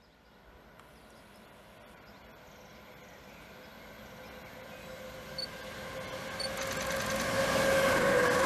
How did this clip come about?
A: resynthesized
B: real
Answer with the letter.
B